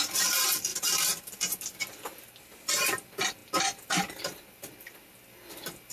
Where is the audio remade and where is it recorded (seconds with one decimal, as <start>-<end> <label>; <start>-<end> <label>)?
0.0-0.7 remade; 0.7-2.4 recorded; 2.4-3.4 remade; 3.4-4.2 recorded; 4.2-5.9 remade